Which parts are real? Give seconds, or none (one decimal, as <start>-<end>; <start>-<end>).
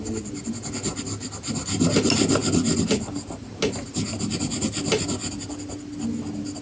0.0-6.6